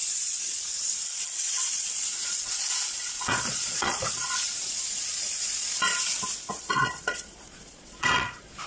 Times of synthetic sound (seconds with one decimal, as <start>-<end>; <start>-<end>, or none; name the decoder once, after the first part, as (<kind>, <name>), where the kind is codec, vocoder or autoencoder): 0.0-5.9 (vocoder, Vocos); 6.5-8.7